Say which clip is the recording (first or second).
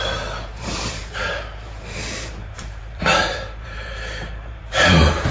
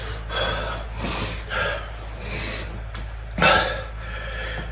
second